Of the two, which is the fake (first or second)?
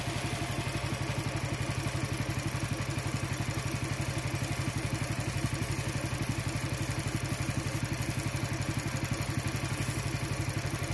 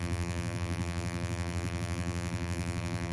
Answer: second